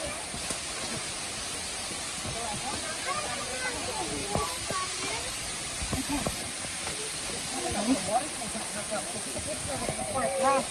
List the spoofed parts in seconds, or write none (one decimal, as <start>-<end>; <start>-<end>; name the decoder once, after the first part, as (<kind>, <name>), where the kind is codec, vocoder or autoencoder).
4.2-5.4 (vocoder, BigVGAN v2); 5.9-9.6